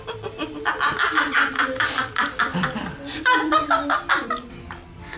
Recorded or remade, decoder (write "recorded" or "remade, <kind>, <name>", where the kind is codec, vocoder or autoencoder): remade, vocoder, BigVGAN v2